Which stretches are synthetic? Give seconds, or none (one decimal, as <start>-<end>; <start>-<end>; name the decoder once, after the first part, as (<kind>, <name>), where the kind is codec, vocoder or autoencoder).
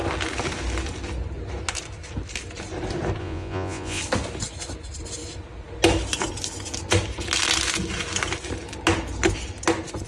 3.2-4.0 (vocoder, Vocos)